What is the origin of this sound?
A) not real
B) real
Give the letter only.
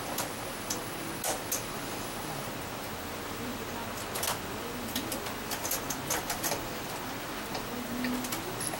B